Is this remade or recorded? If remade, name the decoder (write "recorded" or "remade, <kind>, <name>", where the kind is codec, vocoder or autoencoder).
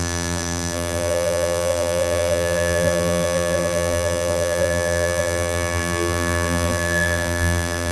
remade, vocoder, BigVGAN v2